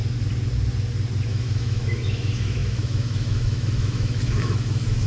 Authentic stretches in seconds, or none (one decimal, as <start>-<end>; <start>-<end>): 0.0-1.3